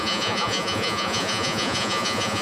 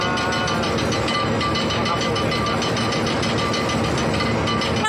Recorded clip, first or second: second